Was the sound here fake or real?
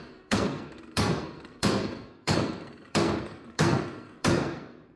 fake